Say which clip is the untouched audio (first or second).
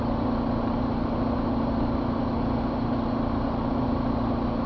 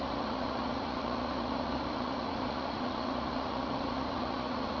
first